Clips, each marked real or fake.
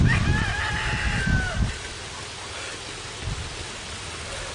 real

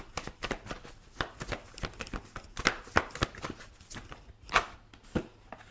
real